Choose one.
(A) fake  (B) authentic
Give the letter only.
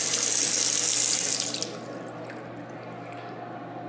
B